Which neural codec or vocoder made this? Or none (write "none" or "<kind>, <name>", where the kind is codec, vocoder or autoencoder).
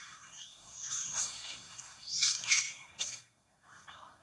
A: codec, SNAC